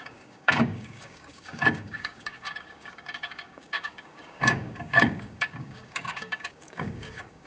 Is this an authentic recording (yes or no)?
no